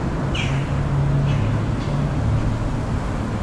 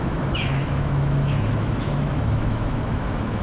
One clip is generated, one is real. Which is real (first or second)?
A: first